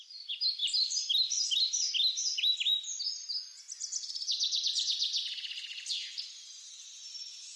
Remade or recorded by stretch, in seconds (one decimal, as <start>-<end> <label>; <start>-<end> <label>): 0.0-7.6 recorded